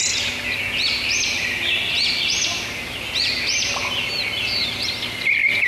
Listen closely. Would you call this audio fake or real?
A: real